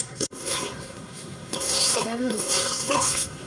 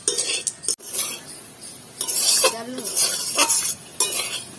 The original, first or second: second